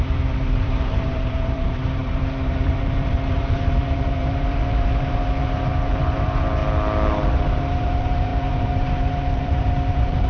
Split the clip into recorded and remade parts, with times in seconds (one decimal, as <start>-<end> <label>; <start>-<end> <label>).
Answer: 0.0-6.6 remade; 6.6-7.1 recorded; 7.1-10.3 remade